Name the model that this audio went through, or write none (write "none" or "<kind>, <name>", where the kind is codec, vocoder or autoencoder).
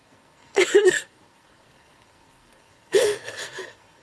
codec, SNAC